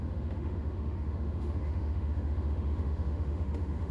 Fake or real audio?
fake